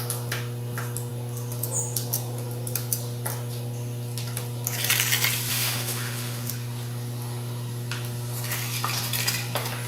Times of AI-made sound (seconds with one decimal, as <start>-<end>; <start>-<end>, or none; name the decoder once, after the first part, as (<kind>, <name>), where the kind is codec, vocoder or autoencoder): 5.5-6.5 (autoencoder, DAC-VAE)